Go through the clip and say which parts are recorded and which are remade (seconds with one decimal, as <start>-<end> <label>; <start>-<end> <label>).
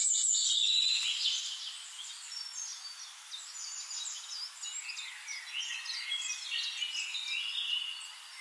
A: 0.0-8.4 recorded